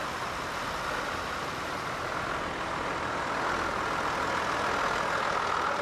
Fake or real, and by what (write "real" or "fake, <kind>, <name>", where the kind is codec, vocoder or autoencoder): real